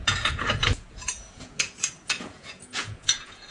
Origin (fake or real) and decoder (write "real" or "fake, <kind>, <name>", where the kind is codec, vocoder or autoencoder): fake, vocoder, Vocos